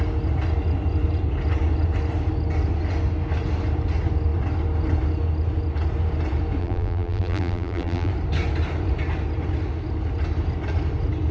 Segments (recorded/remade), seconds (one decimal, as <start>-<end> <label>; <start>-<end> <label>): 0.0-6.6 recorded; 6.6-8.1 remade; 8.1-11.3 recorded